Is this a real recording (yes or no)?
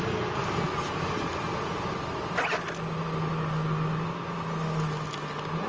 yes